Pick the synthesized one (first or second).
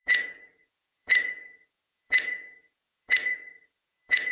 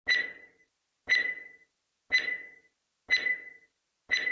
first